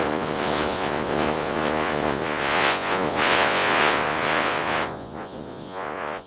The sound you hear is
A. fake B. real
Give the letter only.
A